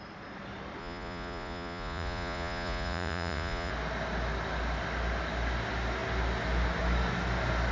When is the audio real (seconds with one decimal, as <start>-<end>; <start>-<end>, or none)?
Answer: 0.0-0.8; 3.7-7.7